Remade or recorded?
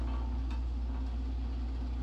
recorded